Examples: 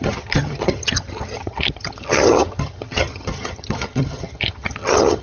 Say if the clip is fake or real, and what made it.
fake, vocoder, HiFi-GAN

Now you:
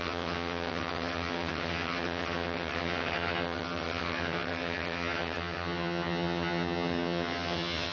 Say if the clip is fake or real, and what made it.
fake, vocoder, HiFi-GAN